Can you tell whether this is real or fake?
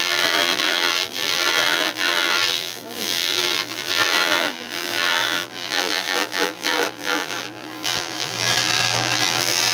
fake